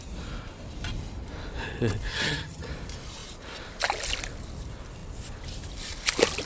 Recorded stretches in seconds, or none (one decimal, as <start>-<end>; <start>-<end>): 0.0-2.1; 2.7-6.5